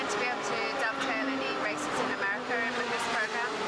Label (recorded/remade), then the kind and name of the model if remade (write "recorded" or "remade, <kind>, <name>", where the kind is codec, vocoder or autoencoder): recorded